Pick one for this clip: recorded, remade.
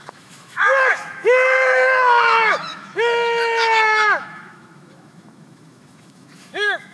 remade